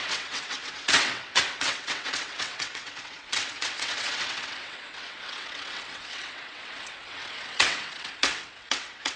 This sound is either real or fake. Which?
fake